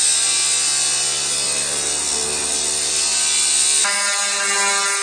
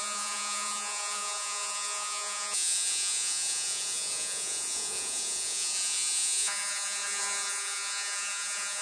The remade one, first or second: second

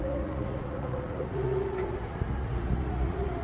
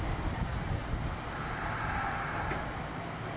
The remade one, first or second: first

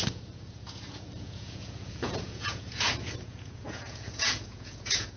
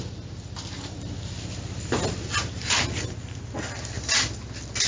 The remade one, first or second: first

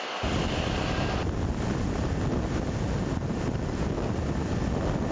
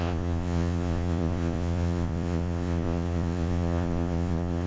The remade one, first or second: second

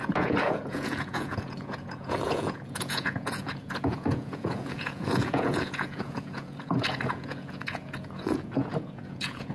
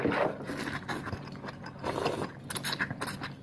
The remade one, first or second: first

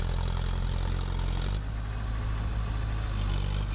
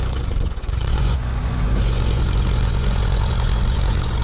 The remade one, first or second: second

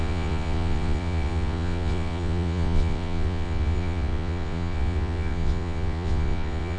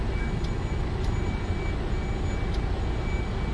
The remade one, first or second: first